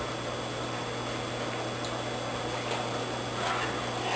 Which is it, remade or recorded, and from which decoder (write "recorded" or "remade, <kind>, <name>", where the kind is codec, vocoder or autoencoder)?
recorded